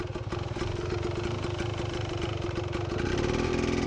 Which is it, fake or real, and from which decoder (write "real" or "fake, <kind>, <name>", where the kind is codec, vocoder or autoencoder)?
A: real